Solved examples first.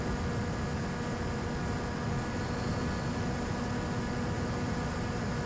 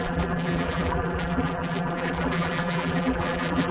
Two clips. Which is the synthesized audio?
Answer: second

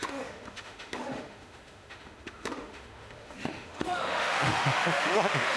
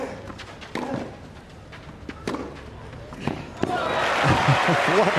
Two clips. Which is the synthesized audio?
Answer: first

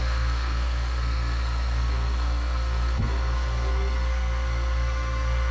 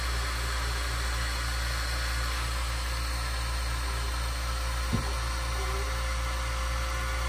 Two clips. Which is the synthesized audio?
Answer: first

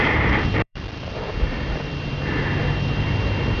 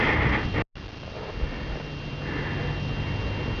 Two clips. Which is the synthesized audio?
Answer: first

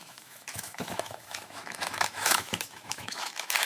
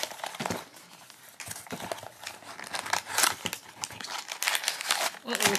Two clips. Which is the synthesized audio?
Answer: first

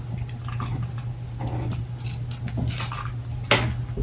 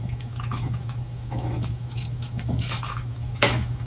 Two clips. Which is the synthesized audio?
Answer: second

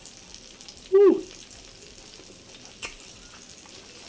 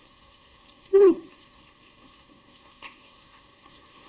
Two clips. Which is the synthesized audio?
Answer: second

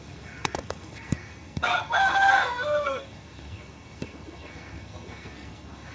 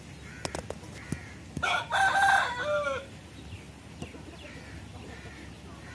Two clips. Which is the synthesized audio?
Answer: first